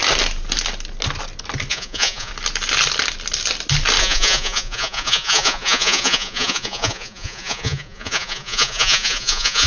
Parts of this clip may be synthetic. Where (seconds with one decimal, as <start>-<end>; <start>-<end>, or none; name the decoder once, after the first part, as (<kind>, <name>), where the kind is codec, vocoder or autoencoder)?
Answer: 1.7-2.3 (vocoder, Vocos); 4.0-9.7